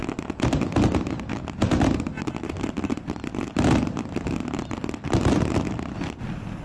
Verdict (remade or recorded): recorded